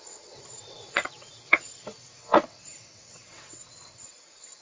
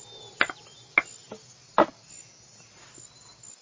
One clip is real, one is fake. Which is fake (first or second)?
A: first